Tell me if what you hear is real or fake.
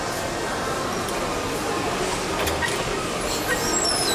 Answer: real